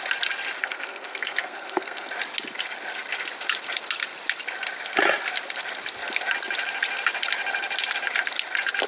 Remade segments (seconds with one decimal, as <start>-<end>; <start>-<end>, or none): 0.6-2.1